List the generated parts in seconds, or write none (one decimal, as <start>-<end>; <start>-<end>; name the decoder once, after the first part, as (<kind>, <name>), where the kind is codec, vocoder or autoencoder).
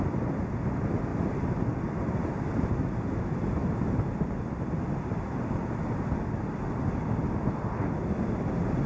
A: 1.1-3.2 (vocoder, BigVGAN v2)